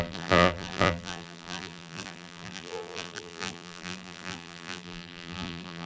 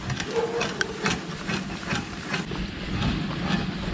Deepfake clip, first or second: first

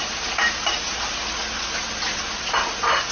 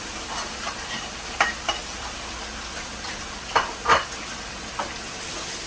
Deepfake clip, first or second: second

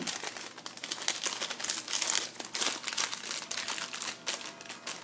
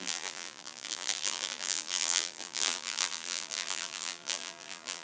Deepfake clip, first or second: second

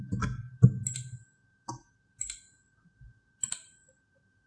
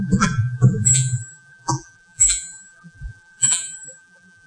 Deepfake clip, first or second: second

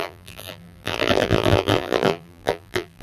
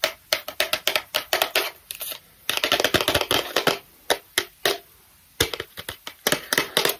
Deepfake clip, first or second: first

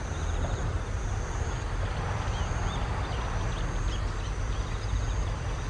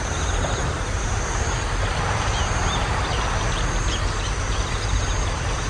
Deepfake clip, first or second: second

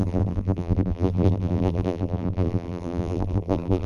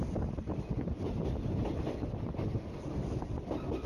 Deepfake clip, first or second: first